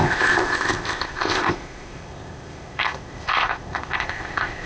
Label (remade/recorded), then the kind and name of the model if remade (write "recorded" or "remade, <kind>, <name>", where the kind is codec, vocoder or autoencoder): remade, codec, ZipCodec